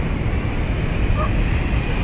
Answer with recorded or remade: recorded